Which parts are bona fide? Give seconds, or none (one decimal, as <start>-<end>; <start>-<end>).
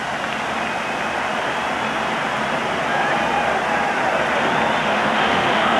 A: 0.0-4.8